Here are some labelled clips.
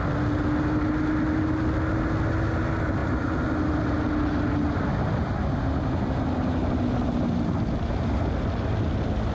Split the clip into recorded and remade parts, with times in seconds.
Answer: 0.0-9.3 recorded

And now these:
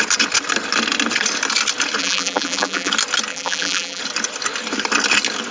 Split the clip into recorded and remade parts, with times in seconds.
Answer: 0.0-2.0 recorded; 2.0-2.9 remade; 2.9-3.3 recorded; 3.3-4.0 remade; 4.0-5.5 recorded

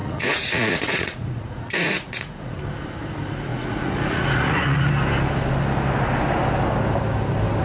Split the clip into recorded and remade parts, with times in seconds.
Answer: 0.0-2.6 remade; 2.6-3.5 recorded; 3.5-4.9 remade; 4.9-7.6 recorded

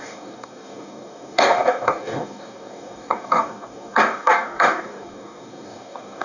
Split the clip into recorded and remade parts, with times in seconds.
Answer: 0.0-6.2 remade

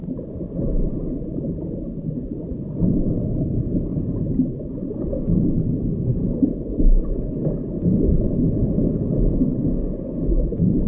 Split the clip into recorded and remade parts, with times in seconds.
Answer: 0.0-2.8 remade; 2.8-3.9 recorded; 3.9-4.9 remade; 4.9-6.1 recorded; 6.1-7.8 remade; 7.8-10.9 recorded

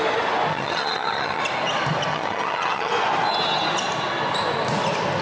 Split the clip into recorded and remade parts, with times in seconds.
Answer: 0.0-0.5 recorded; 0.5-1.4 remade; 1.4-2.1 recorded; 2.1-2.9 remade; 2.9-5.2 recorded

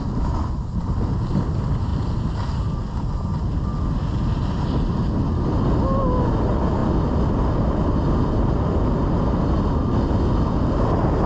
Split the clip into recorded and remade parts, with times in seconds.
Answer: 0.0-11.3 recorded

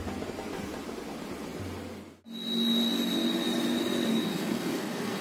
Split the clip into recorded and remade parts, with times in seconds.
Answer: 0.0-4.1 recorded; 4.1-5.2 remade